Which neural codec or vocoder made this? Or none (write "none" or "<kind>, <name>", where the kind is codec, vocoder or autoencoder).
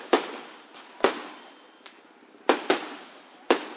none